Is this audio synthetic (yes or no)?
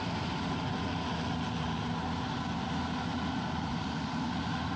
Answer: no